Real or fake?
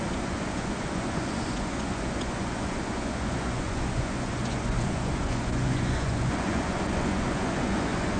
fake